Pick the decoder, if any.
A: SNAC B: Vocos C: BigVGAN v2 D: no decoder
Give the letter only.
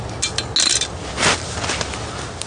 D